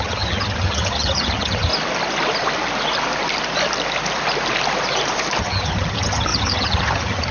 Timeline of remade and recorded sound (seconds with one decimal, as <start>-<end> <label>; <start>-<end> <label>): 0.0-1.7 remade; 1.7-5.4 recorded; 5.4-7.3 remade